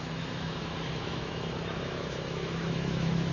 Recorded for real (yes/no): no